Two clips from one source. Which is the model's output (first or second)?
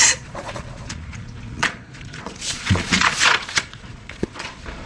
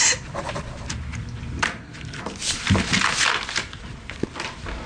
first